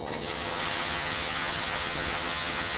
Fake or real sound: fake